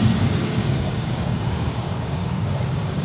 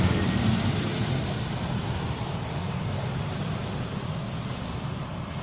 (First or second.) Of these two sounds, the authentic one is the second